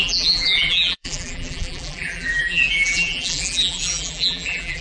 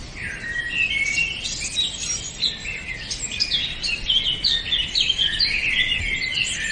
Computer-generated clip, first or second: first